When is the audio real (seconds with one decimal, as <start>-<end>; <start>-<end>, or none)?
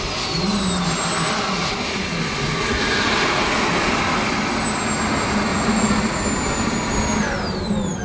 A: 0.0-5.5; 6.2-8.0